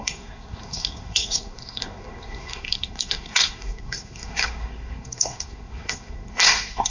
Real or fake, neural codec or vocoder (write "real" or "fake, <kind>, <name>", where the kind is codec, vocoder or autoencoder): fake, codec, SNAC